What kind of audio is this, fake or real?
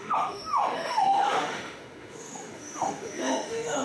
fake